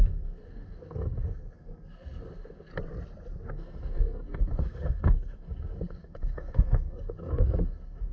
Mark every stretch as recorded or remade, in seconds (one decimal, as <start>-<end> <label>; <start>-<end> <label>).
0.0-2.7 remade; 2.7-3.5 recorded; 3.5-8.1 remade